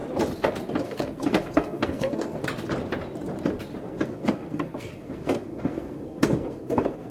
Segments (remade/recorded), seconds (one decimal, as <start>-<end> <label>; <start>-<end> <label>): 0.0-0.8 recorded; 0.8-2.5 remade; 2.5-3.8 recorded; 3.8-7.1 remade